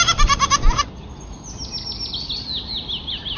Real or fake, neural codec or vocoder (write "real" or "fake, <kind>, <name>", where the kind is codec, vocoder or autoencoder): real